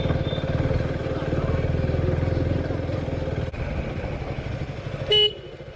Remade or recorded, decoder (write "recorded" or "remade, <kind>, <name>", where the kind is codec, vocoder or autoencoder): recorded